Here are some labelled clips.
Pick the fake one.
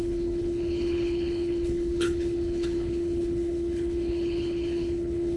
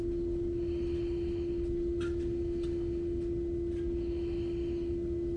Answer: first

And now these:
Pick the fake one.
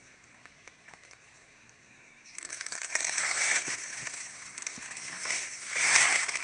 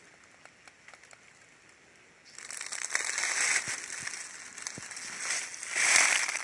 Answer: first